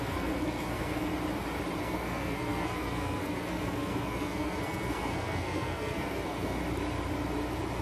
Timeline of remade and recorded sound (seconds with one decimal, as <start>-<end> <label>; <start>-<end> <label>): 0.0-1.1 remade; 1.1-1.8 recorded; 1.8-6.6 remade; 6.6-7.8 recorded